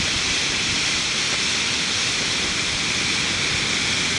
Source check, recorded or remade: recorded